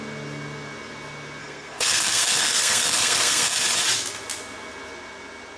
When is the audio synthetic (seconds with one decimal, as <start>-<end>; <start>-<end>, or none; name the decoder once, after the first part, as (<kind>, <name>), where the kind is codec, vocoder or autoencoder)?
1.4-3.5 (codec, SNAC)